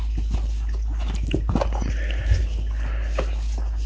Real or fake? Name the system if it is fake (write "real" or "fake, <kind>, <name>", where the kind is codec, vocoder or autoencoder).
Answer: real